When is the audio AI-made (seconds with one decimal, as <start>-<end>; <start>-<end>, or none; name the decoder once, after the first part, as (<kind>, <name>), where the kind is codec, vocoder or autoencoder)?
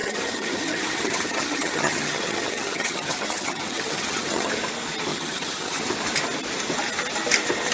0.0-4.5 (vocoder, HiFi-GAN); 5.1-5.8